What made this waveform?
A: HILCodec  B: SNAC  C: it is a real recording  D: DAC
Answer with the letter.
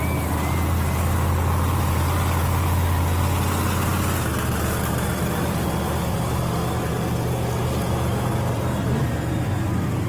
C